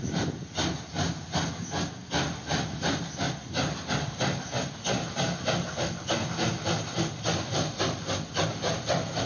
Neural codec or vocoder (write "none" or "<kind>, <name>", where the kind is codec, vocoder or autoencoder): none